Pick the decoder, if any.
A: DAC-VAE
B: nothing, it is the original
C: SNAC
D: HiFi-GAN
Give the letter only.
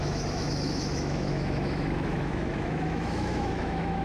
A